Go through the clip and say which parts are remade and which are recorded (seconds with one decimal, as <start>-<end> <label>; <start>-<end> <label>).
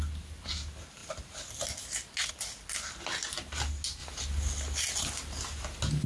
0.0-6.1 recorded